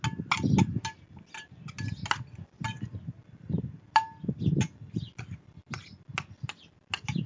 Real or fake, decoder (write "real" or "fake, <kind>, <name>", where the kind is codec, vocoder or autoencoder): real